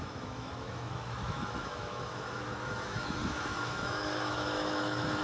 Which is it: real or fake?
fake